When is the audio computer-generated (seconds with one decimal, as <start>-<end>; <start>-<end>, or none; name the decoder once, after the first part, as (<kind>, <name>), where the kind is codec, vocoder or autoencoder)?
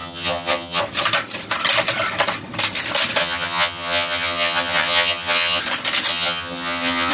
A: 0.0-0.8 (vocoder, HiFi-GAN); 3.2-5.6; 6.1-7.1